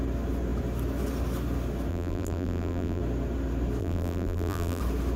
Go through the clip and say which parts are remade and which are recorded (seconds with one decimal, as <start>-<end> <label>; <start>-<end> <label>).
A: 0.0-1.9 recorded; 1.9-3.0 remade; 3.0-3.8 recorded; 3.8-4.8 remade; 4.8-5.2 recorded